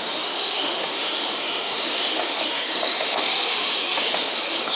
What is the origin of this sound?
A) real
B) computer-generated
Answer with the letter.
B